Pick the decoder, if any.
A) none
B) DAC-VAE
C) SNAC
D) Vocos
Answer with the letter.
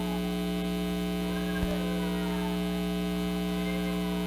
A